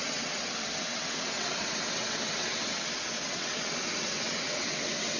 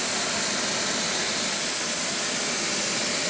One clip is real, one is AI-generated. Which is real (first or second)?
second